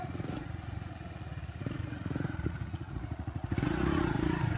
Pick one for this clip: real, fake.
fake